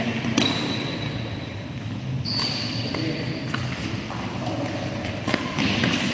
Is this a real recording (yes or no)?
yes